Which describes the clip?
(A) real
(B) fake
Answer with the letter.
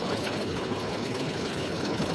B